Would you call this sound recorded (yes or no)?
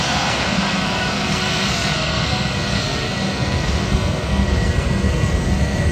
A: no